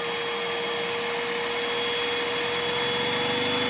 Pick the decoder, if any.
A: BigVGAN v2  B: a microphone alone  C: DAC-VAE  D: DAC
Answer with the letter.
B